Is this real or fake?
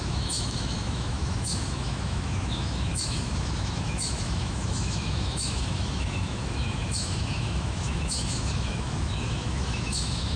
fake